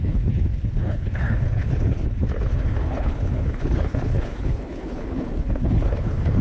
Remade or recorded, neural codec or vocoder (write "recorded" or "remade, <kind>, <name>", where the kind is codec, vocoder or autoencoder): remade, codec, HILCodec